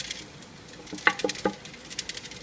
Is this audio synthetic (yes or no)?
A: no